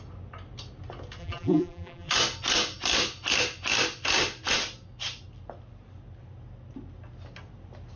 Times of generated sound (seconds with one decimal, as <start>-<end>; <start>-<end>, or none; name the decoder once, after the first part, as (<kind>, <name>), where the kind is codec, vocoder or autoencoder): 1.2-2.1 (vocoder, BigVGAN v2)